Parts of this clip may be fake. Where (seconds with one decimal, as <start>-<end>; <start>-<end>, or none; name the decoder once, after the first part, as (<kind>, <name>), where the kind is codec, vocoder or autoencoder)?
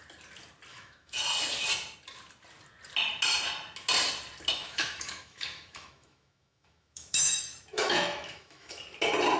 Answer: 0.7-1.2 (autoencoder, DAC-VAE); 4.5-8.8